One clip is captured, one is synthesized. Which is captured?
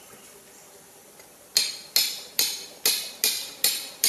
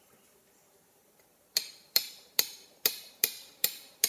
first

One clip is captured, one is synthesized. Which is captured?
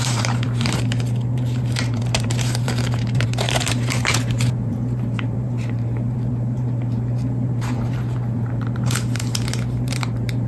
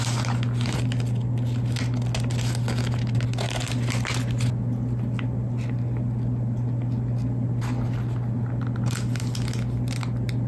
second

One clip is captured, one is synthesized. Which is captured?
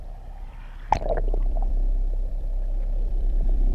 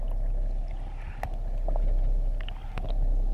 second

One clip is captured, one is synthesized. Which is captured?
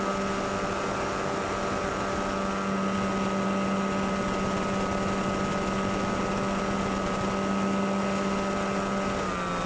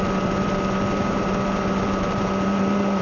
first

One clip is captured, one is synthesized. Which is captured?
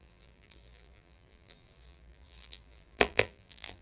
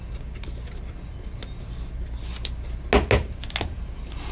second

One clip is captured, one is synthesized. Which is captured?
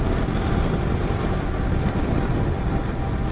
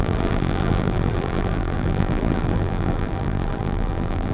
first